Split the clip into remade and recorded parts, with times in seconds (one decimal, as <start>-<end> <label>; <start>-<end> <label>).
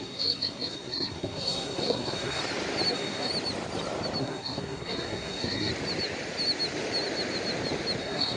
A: 0.0-2.4 remade; 2.4-2.9 recorded; 2.9-3.3 remade; 3.3-4.2 recorded; 4.2-5.7 remade; 5.7-8.0 recorded; 8.0-8.4 remade